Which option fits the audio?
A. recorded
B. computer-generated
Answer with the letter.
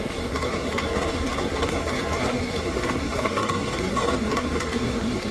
B